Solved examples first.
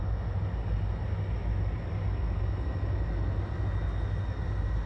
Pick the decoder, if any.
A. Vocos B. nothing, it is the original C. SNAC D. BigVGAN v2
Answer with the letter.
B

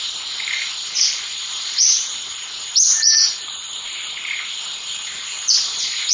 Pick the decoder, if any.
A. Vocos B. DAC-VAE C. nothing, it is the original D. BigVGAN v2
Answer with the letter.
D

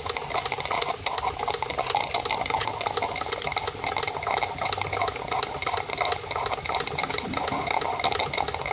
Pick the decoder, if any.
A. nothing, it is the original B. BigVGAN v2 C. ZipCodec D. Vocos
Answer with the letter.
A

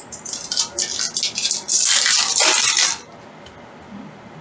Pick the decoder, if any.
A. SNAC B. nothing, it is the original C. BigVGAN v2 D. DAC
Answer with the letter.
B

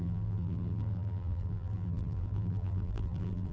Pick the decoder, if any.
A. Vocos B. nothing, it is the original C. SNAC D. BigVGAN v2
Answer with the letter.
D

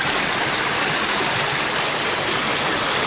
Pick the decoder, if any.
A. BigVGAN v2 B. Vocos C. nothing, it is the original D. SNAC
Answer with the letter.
A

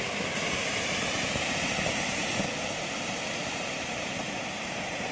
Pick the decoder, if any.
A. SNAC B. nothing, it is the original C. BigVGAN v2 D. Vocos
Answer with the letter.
C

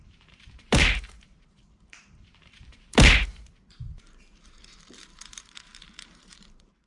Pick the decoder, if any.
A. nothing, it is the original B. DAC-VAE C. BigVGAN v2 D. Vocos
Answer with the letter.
C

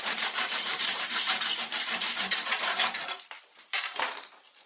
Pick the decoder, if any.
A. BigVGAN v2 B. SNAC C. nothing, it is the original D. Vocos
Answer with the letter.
A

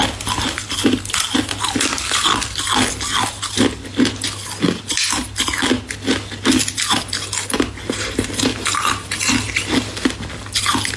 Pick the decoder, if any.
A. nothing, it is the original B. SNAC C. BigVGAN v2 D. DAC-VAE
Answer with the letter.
A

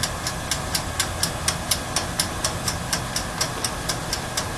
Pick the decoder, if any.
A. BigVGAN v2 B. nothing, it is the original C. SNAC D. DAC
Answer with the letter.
B